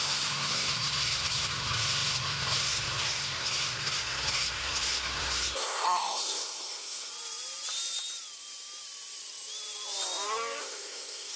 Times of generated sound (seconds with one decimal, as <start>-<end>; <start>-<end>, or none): 0.0-7.1; 10.6-11.4